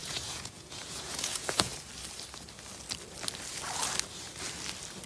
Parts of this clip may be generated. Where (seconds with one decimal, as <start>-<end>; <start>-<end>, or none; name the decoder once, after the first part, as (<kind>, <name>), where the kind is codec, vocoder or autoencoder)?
0.0-1.7 (vocoder, Vocos)